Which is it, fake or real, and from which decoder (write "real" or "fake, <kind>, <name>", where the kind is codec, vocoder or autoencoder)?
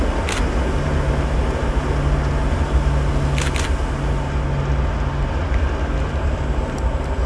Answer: real